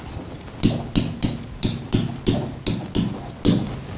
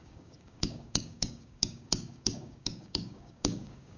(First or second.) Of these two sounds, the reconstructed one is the second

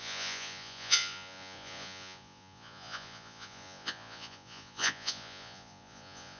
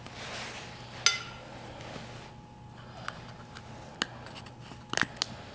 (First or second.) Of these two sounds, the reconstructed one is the first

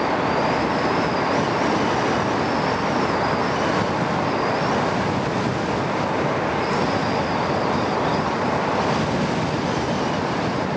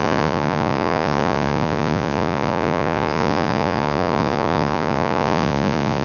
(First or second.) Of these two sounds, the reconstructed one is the second